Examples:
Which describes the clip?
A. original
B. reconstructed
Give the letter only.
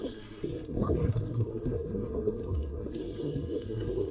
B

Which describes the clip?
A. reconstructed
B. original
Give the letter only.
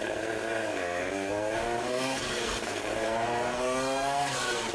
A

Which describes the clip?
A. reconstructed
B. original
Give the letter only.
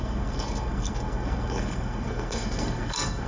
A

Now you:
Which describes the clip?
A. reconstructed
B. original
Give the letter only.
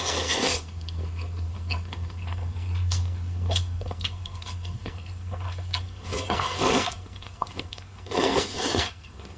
A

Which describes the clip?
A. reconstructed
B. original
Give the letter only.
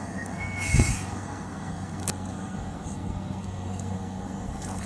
A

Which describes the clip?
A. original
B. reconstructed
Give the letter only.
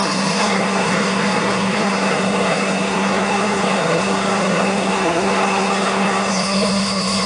B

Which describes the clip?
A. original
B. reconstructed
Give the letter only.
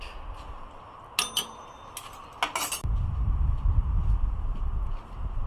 A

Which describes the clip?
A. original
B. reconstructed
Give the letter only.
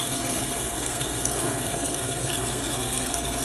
B